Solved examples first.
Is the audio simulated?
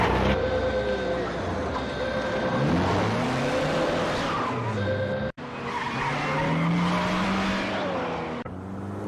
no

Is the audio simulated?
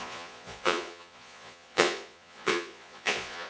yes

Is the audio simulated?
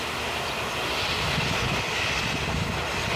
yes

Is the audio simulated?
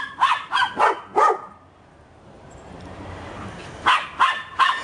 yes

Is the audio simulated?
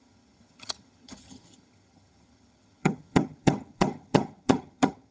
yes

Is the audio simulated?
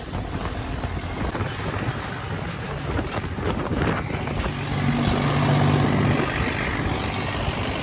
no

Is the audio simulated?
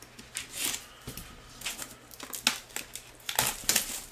no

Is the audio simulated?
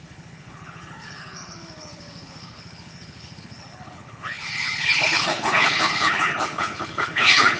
yes